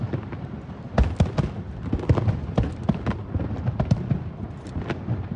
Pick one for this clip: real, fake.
real